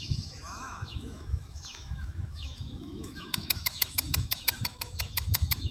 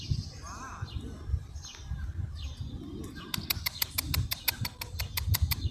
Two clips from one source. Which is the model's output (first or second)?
first